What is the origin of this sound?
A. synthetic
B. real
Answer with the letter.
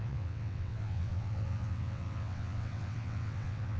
A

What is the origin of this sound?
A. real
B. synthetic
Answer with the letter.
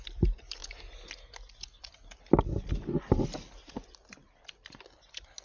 A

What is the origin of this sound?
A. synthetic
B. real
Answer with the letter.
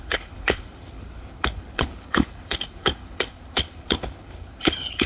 A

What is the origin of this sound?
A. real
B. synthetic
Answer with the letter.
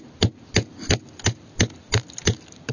A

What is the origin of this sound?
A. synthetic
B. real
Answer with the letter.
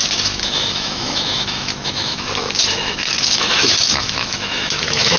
A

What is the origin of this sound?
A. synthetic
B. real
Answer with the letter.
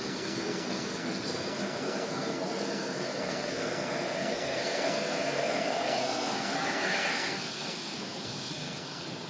A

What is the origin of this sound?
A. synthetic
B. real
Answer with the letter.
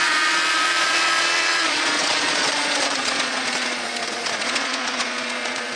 A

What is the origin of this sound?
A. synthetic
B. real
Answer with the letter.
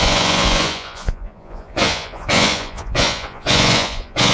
A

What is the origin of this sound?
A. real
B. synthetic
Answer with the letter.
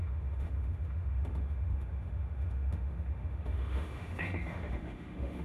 B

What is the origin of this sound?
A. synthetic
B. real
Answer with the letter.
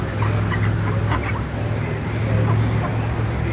B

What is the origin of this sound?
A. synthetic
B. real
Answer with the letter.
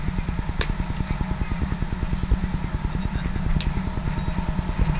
B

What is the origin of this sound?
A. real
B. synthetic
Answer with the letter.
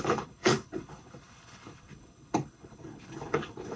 B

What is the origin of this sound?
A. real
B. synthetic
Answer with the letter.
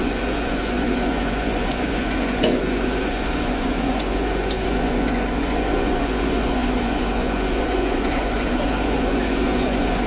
B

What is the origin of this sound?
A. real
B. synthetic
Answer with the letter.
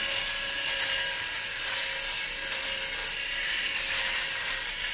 A